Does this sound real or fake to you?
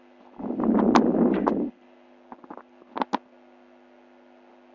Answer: real